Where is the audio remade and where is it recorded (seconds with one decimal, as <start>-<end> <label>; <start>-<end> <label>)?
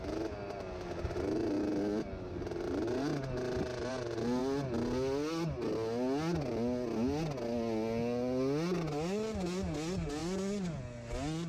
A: 0.0-11.5 recorded